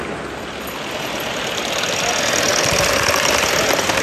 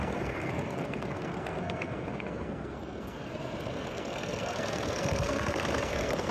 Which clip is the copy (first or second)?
second